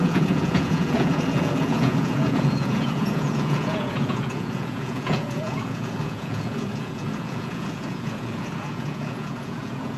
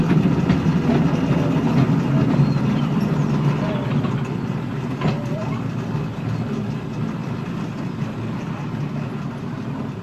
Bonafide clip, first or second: second